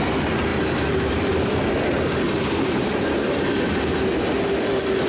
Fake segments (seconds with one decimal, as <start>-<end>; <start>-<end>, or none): 0.5-3.6